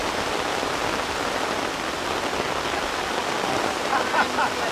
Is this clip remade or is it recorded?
recorded